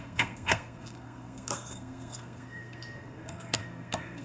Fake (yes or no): yes